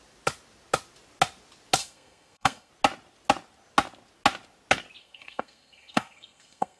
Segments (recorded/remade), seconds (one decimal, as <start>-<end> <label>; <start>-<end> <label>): 0.0-1.8 recorded; 1.8-2.7 remade; 2.7-5.0 recorded; 5.0-6.8 remade